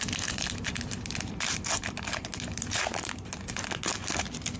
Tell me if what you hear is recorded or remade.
recorded